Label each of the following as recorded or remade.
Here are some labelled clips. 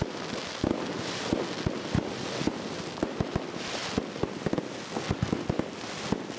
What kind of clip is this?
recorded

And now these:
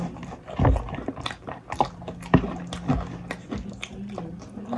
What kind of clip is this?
recorded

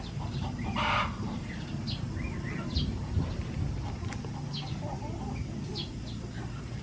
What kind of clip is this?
recorded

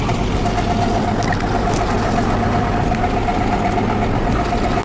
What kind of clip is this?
recorded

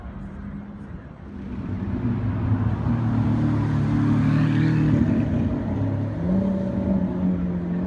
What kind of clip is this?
recorded